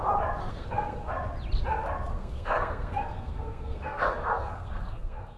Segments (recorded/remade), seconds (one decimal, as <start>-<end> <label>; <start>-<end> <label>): 0.0-0.5 recorded; 0.5-1.1 remade; 1.1-2.1 recorded; 2.1-5.4 remade